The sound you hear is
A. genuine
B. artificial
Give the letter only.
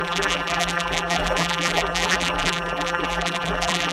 B